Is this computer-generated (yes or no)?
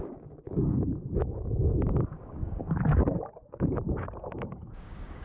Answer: yes